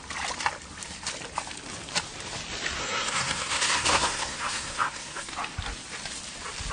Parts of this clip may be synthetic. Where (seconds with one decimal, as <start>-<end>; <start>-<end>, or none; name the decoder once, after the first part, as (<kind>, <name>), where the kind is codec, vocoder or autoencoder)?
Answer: 2.8-5.3 (codec, SNAC)